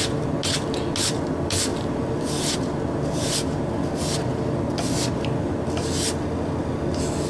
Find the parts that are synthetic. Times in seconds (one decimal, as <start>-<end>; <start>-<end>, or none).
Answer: none